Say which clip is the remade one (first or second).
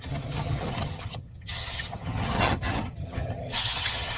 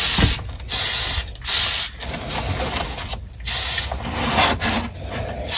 first